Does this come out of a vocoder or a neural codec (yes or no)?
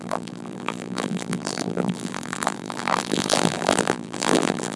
yes